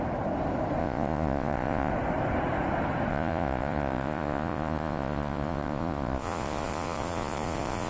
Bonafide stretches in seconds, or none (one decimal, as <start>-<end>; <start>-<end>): 0.0-0.8; 1.9-3.1